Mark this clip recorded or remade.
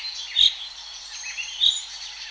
recorded